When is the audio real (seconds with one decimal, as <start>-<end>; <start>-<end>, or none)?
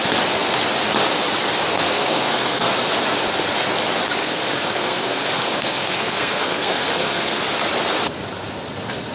0.0-1.7; 2.7-4.2; 7.4-9.1